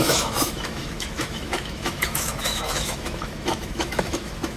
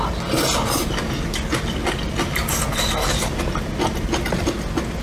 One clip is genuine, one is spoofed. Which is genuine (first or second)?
second